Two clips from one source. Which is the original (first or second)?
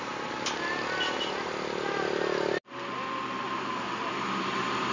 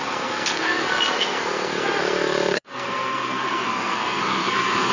first